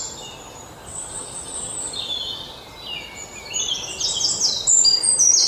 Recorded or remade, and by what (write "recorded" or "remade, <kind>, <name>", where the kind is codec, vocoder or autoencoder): recorded